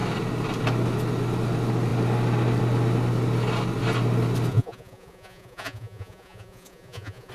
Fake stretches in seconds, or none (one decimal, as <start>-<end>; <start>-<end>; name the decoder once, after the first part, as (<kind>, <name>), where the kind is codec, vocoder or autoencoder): 4.5-7.3 (vocoder, Vocos)